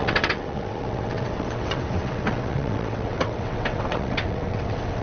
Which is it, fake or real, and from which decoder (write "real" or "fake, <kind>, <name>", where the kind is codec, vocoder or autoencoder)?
fake, vocoder, WaveNeXt